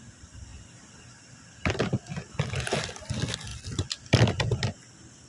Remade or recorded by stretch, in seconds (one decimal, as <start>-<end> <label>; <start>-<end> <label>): 0.0-0.5 recorded; 0.5-2.5 remade; 2.5-3.5 recorded; 3.5-4.3 remade; 4.3-5.3 recorded